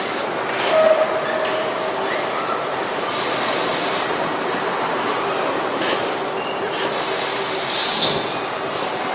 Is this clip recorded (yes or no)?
yes